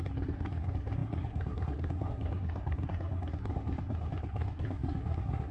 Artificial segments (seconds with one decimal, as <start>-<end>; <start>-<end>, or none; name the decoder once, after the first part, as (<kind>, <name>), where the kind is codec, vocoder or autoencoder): 0.0-5.5 (codec, SNAC)

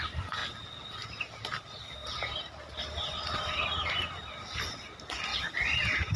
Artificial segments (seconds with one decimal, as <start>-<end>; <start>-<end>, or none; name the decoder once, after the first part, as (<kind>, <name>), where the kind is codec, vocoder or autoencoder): 0.0-0.4 (vocoder, BigVGAN v2); 1.3-6.2

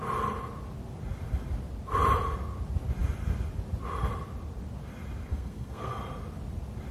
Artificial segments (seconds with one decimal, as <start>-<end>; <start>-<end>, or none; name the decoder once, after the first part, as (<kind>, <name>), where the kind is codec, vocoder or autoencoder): 5.3-5.9 (codec, SNAC)

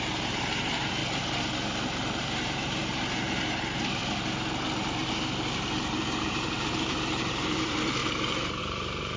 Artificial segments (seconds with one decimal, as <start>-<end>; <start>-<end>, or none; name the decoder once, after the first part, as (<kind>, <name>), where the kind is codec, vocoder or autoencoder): 0.0-1.0 (vocoder, BigVGAN v2); 2.2-4.0; 6.2-8.0; 8.6-9.2